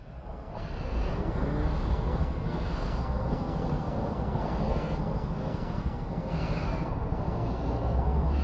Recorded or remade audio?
remade